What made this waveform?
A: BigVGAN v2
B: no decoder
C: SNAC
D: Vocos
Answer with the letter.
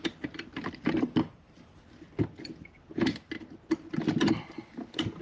B